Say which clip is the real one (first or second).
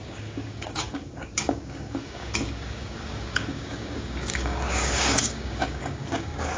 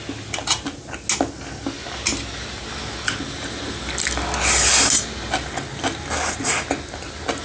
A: second